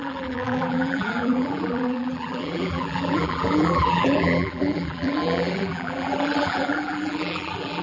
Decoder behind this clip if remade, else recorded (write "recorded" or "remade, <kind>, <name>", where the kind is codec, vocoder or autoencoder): remade, vocoder, BigVGAN v2